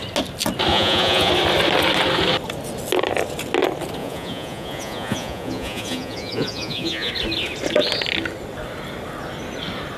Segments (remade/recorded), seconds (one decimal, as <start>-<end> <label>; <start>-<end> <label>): 0.0-0.7 recorded; 0.7-1.3 remade; 1.3-4.0 recorded; 4.0-7.1 remade; 7.1-10.0 recorded

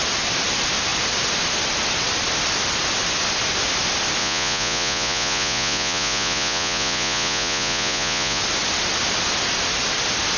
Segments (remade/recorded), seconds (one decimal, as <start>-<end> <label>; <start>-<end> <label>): 0.0-4.2 recorded; 4.2-8.4 remade; 8.4-10.4 recorded

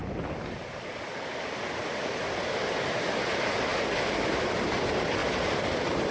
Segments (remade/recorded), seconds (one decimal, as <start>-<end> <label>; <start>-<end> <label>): 0.0-6.1 recorded

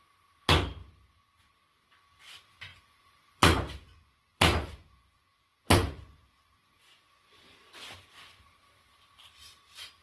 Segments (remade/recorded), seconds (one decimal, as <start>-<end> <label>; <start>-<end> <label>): 0.0-2.7 recorded; 2.7-7.7 remade; 7.7-10.0 recorded